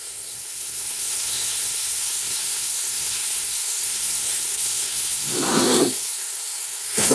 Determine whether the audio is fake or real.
fake